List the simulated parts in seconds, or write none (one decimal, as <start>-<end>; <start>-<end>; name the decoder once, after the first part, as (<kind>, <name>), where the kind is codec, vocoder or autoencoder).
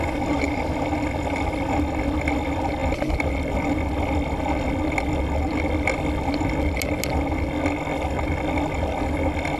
none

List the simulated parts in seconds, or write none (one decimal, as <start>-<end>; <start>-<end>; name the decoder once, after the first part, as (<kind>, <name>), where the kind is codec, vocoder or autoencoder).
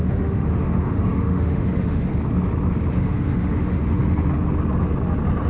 0.0-2.1 (autoencoder, DAC-VAE); 2.9-4.0